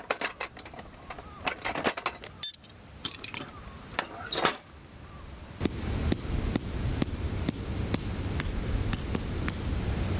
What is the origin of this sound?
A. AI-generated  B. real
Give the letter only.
B